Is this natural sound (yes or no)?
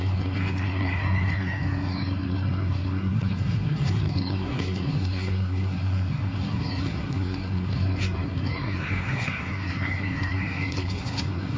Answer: no